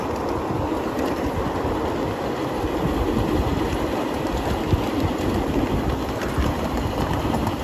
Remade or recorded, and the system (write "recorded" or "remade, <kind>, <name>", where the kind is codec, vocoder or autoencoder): recorded